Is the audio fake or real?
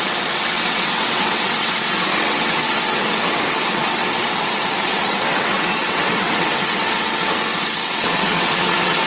fake